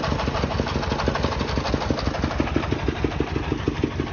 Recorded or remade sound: recorded